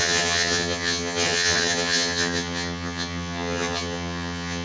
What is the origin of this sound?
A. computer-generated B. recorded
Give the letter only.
A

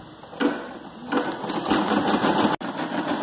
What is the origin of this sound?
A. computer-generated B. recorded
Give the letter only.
B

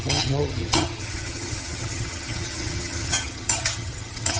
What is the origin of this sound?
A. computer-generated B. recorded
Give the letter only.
A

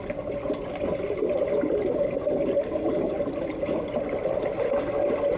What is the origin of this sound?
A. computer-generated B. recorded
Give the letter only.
B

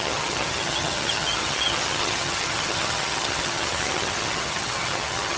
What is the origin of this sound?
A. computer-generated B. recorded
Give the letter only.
A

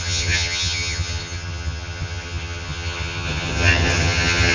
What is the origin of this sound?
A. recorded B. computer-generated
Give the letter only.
B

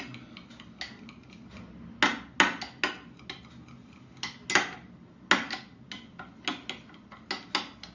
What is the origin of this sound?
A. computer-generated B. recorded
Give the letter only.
B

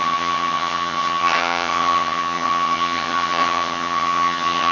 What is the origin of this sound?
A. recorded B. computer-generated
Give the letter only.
B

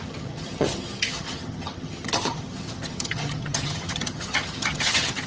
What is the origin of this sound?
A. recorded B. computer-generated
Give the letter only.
B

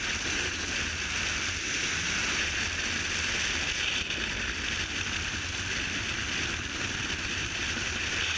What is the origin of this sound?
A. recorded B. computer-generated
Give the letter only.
A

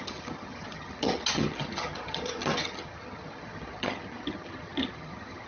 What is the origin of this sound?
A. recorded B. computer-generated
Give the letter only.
B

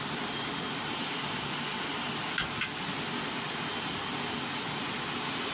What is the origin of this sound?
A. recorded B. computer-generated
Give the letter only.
A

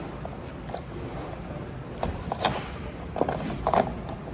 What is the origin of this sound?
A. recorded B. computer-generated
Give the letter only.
A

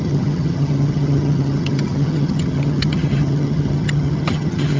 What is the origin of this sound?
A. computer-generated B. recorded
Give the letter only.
A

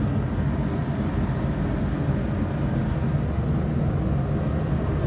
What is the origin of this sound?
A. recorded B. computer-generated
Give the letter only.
A